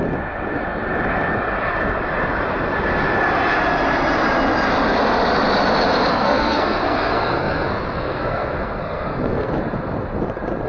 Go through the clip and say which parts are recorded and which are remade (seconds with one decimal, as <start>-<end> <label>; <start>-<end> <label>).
0.0-6.1 recorded; 6.1-9.5 remade; 9.5-10.7 recorded